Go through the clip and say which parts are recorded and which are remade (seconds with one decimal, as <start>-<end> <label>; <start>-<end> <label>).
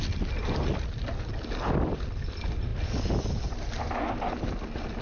0.0-5.0 recorded